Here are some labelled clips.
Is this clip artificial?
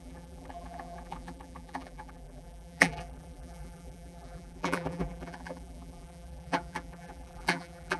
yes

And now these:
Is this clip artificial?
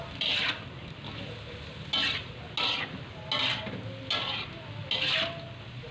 no